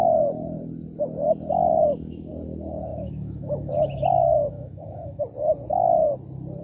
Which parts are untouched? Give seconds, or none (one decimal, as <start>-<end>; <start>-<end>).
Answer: 0.0-1.8; 2.3-2.9; 5.2-6.6